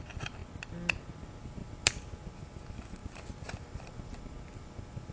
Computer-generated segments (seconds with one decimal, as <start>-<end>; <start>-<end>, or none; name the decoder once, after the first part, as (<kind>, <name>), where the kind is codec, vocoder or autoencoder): none